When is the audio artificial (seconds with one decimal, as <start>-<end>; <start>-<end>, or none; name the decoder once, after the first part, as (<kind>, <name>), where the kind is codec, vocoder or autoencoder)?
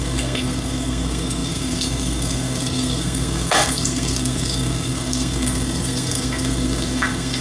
0.0-7.4 (codec, SNAC)